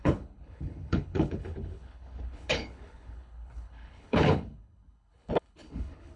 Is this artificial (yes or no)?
yes